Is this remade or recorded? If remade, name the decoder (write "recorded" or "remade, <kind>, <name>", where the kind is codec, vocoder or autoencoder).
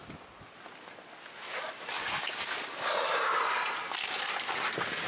recorded